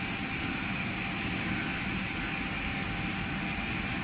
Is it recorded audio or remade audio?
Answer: recorded